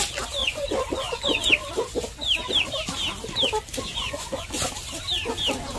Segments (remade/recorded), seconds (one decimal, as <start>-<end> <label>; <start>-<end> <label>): 0.0-0.4 recorded; 0.4-1.5 remade; 1.5-3.9 recorded; 3.9-4.6 remade; 4.6-5.8 recorded